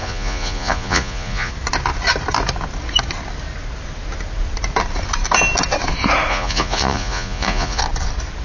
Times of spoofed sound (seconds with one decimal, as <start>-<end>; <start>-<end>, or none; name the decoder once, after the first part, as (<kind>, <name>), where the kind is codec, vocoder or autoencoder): 0.0-1.5 (vocoder, Vocos); 6.3-7.8